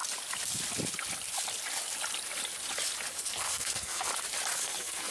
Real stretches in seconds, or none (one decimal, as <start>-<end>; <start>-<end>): 0.0-3.1; 4.1-4.6